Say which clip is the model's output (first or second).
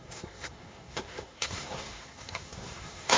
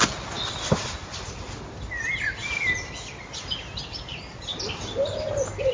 first